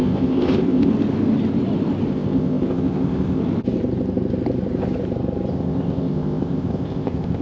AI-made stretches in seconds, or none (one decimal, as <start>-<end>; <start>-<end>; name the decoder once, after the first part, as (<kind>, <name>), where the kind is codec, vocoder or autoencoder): 0.0-0.9 (codec, ZipCodec); 2.1-3.4; 5.5-7.4